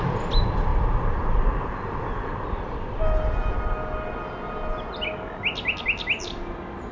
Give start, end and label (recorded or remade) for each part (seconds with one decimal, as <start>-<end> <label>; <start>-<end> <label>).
0.0-6.9 recorded